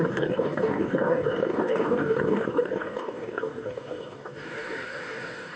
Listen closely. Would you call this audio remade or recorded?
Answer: remade